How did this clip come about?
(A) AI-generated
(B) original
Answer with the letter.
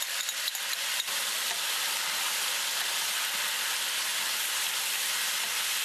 B